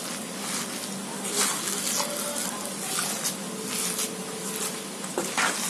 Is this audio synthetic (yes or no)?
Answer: no